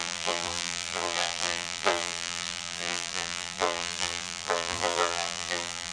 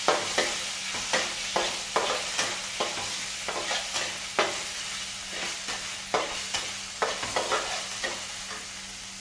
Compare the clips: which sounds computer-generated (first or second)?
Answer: first